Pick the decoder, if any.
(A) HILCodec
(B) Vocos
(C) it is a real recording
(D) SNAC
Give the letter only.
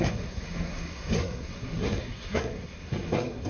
D